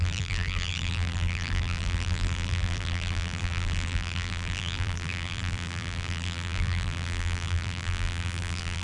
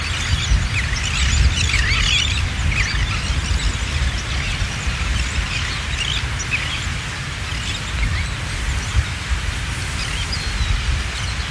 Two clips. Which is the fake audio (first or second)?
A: first